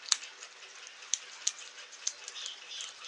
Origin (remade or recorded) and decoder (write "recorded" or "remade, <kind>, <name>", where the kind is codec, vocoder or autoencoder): recorded